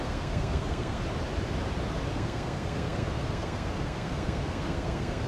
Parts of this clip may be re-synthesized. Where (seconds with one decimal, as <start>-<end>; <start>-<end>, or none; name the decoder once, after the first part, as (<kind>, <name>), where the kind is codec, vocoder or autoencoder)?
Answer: 0.0-1.0 (codec, SNAC); 2.1-5.3